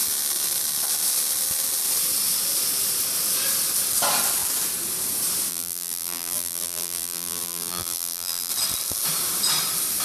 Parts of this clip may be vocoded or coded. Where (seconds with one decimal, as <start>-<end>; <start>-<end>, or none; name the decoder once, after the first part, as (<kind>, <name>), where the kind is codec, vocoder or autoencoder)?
5.5-8.5 (vocoder, BigVGAN v2)